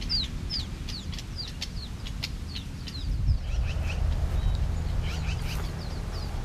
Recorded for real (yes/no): yes